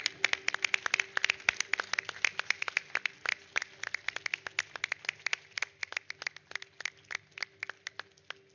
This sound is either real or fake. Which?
real